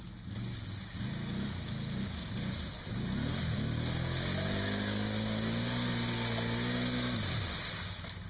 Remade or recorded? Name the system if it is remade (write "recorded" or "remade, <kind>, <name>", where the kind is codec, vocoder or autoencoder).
recorded